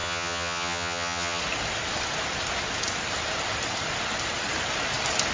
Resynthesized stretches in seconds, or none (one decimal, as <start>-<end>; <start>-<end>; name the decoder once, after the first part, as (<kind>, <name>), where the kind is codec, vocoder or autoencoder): 0.0-1.4 (vocoder, HiFi-GAN)